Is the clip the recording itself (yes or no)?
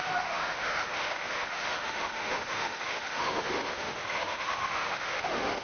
no